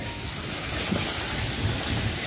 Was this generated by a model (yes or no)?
no